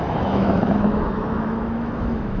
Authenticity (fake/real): fake